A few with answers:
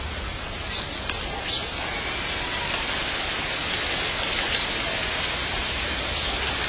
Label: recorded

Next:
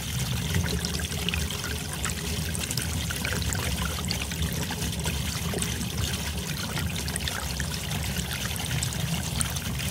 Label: recorded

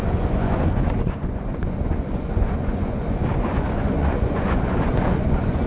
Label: remade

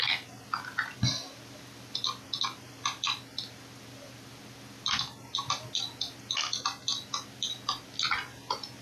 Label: recorded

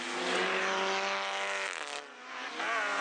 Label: recorded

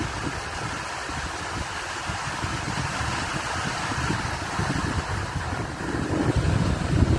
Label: recorded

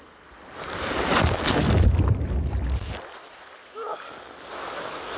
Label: recorded